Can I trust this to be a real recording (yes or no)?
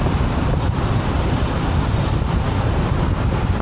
yes